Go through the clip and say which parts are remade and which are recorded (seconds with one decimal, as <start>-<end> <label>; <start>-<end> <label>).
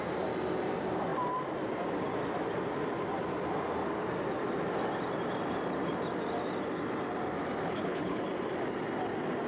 0.0-7.6 recorded; 7.6-8.2 remade; 8.2-9.5 recorded